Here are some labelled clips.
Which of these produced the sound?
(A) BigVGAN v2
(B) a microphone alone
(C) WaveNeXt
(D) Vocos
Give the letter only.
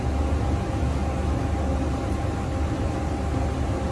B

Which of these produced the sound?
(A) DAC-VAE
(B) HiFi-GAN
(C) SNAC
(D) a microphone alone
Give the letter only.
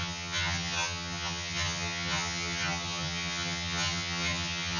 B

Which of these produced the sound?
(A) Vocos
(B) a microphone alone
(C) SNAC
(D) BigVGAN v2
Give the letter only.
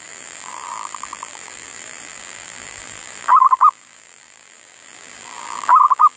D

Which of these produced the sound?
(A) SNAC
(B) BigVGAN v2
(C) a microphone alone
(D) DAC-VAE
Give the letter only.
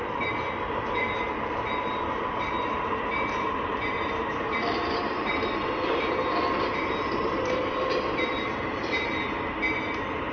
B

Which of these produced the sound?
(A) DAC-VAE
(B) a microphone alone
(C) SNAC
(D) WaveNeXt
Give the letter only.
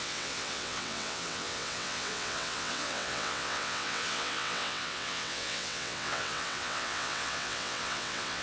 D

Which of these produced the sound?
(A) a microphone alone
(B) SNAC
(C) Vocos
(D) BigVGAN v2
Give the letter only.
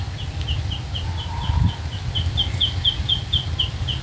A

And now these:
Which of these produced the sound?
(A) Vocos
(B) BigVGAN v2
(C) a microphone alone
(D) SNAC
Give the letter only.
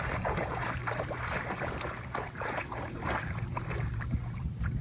B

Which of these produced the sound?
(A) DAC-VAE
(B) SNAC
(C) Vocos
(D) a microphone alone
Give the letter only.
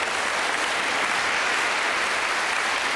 D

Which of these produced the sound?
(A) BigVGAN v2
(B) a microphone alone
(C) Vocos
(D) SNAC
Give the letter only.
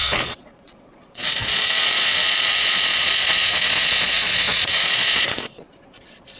C